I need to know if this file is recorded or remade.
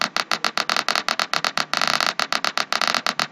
recorded